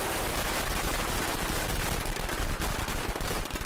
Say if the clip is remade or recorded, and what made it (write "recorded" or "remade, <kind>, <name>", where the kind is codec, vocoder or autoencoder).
recorded